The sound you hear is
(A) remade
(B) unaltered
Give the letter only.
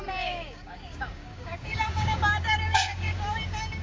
A